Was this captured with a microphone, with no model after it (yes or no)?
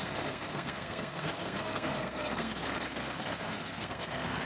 no